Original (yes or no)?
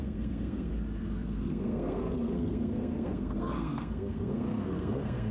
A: no